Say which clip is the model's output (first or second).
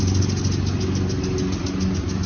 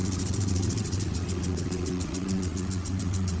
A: second